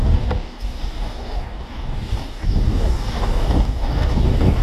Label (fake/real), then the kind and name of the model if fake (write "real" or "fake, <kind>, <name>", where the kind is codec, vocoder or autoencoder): fake, codec, DAC